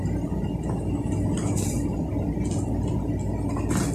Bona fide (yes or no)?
yes